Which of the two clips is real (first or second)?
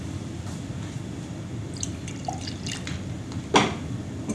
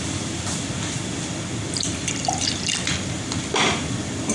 first